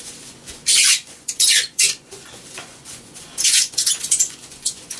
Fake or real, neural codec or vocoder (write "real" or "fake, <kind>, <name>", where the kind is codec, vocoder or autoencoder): fake, vocoder, Vocos